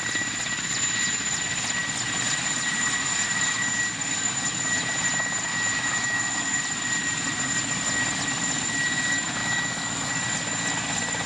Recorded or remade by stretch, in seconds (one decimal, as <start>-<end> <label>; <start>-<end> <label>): 0.0-5.5 recorded; 5.5-6.6 remade; 6.6-9.4 recorded; 9.4-10.1 remade; 10.1-11.3 recorded